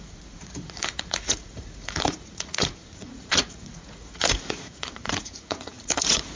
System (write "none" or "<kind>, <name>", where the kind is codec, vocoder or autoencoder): vocoder, Vocos